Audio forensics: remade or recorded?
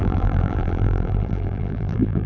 remade